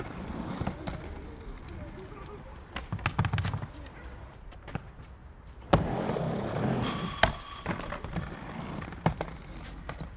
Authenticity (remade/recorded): recorded